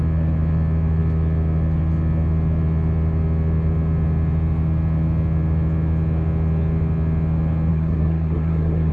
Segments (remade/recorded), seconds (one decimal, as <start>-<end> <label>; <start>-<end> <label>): 0.0-7.7 recorded; 7.7-8.9 remade